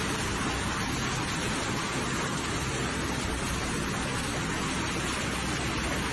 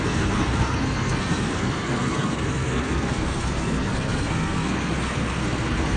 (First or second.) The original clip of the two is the first